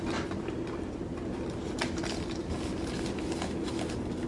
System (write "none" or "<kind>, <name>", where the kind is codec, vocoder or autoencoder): none